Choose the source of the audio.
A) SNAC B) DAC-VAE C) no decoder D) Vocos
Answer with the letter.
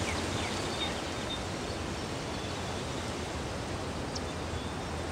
C